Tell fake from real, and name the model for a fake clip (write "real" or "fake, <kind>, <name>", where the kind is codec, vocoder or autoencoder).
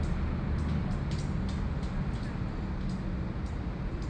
real